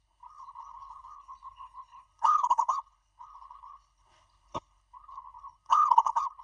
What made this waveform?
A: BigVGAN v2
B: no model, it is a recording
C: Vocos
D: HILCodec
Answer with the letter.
D